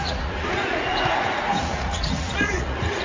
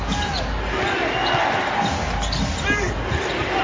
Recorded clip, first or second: second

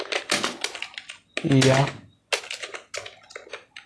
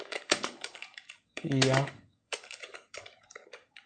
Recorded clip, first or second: first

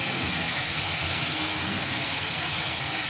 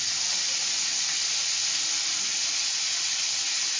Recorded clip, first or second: second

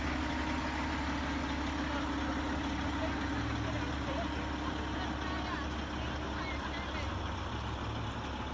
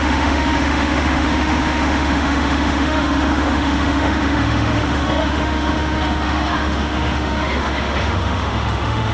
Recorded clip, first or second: first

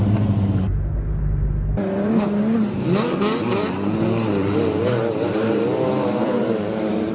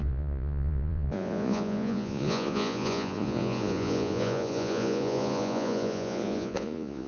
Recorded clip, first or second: first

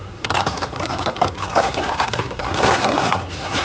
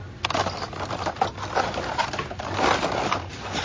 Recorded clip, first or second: second